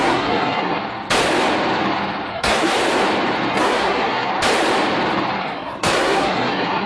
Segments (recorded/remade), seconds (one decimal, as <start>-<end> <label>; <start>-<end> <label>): 0.0-0.8 remade; 0.8-2.3 recorded; 2.3-2.7 remade; 2.7-3.5 recorded; 3.5-4.3 remade; 4.3-5.4 recorded; 5.4-6.9 remade